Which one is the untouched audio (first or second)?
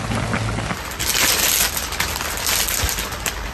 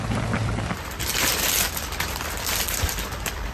first